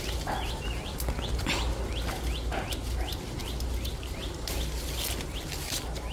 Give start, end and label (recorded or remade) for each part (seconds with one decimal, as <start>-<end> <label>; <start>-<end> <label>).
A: 0.0-6.1 recorded